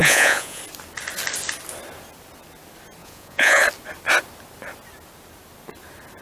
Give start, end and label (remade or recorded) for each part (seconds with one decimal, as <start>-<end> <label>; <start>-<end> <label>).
0.0-0.6 remade; 0.6-3.0 recorded; 3.0-3.6 remade; 3.6-6.2 recorded